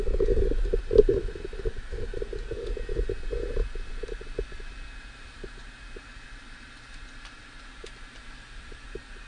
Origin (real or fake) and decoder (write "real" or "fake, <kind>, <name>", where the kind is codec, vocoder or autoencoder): fake, vocoder, BigVGAN v2